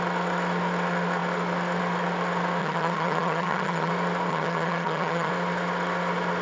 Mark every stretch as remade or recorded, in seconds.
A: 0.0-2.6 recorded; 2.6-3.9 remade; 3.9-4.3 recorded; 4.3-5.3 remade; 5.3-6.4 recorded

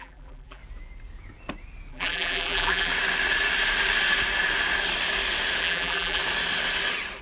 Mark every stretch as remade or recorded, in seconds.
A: 0.0-0.6 remade; 0.6-1.9 recorded; 1.9-2.9 remade; 2.9-5.6 recorded; 5.6-6.2 remade; 6.2-7.2 recorded